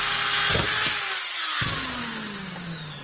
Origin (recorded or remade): recorded